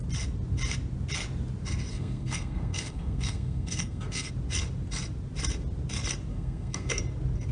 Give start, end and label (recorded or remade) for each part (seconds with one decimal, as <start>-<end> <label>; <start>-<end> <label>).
0.0-1.9 recorded; 1.9-4.3 remade; 4.3-6.3 recorded; 6.3-7.0 remade; 7.0-7.5 recorded